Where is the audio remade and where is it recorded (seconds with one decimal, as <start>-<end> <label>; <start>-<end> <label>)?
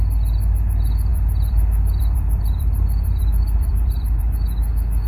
0.0-1.1 recorded; 1.1-4.2 remade; 4.2-5.1 recorded